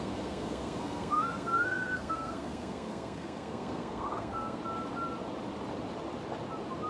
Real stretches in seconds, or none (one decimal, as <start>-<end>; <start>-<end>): 4.6-6.9